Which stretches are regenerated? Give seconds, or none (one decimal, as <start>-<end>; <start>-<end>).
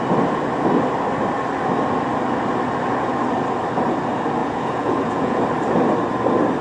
4.4-5.4